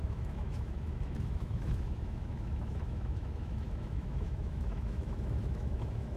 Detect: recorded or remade remade